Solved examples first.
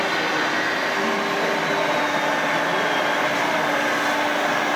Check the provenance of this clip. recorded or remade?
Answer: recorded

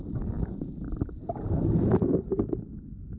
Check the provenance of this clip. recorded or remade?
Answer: remade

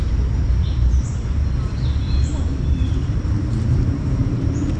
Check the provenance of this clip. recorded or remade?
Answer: remade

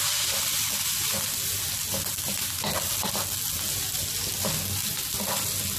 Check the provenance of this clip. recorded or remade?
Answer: recorded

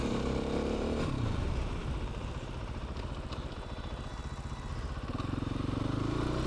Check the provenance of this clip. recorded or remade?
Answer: remade